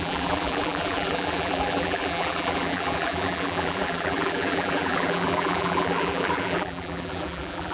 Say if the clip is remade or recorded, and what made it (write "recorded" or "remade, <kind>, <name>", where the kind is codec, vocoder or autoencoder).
remade, vocoder, BigVGAN v2